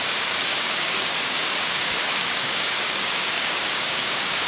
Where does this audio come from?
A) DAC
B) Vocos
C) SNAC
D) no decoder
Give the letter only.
A